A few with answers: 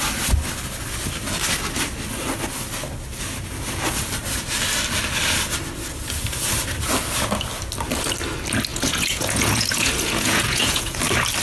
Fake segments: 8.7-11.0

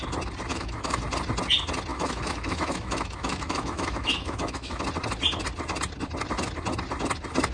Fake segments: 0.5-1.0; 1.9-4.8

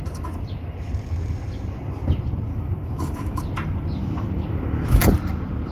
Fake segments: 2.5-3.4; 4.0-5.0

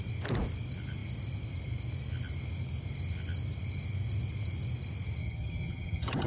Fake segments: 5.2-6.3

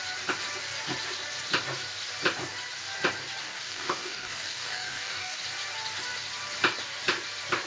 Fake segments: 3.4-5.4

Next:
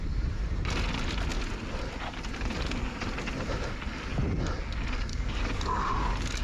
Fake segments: 5.1-6.4